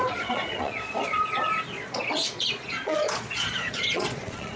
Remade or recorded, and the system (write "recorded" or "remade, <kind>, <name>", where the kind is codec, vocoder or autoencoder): remade, vocoder, Vocos